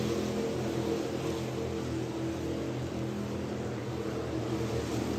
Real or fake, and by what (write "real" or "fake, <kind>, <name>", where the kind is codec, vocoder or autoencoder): real